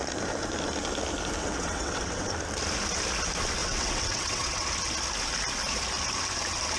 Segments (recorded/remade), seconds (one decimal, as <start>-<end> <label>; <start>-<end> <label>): 0.0-1.4 recorded; 1.4-2.3 remade; 2.3-3.6 recorded; 3.6-4.7 remade; 4.7-6.8 recorded